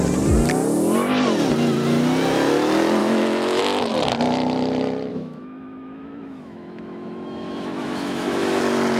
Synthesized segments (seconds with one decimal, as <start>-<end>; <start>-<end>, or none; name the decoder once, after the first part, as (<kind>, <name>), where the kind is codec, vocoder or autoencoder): 3.0-3.6 (autoencoder, DAC-VAE); 5.1-8.6